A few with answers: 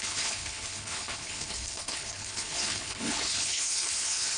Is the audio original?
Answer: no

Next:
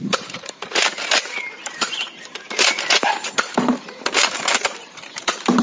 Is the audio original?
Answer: no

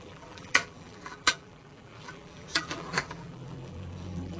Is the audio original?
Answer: no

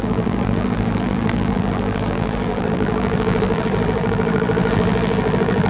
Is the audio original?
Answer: no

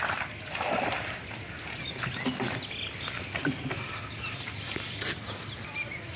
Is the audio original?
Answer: yes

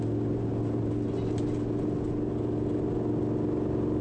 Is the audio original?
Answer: yes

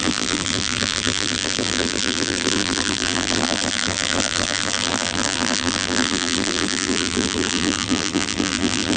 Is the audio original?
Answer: no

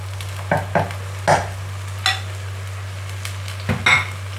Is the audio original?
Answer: yes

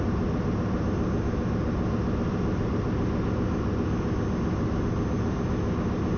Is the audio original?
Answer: yes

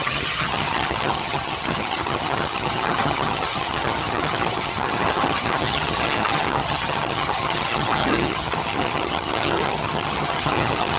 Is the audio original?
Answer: no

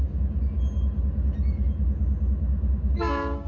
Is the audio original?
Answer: yes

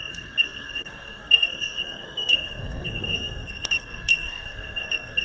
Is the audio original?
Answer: no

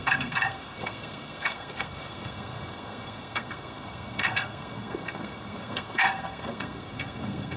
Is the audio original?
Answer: no